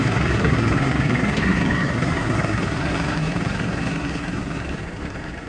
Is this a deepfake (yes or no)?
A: yes